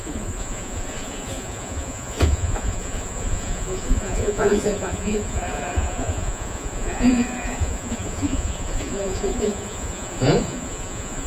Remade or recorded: remade